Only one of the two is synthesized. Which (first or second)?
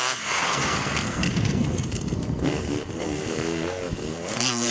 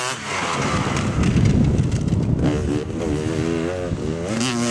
first